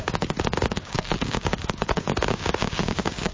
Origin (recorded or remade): remade